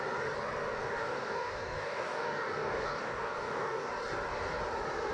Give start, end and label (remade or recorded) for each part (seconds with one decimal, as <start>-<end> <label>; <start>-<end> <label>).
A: 0.0-0.8 recorded; 0.8-3.9 remade; 3.9-5.1 recorded